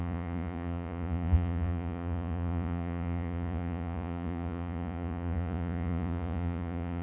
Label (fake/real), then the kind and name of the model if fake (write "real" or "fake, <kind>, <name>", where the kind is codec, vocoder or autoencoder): fake, vocoder, Vocos